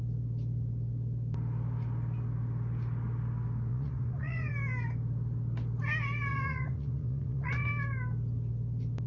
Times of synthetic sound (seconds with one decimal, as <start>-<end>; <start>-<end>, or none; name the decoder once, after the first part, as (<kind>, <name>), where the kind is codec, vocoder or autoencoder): 3.7-4.5 (vocoder, Vocos); 6.3-7.7

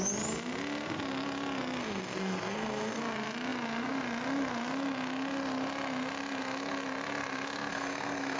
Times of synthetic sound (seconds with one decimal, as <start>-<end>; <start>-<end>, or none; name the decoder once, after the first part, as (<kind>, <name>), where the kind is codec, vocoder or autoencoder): 1.8-3.0 (codec, SNAC); 7.7-8.4

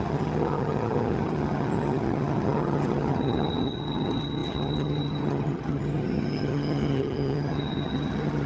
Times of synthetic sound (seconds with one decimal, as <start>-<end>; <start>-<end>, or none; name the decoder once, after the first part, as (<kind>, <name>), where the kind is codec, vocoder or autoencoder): 0.0-8.5 (vocoder, HiFi-GAN)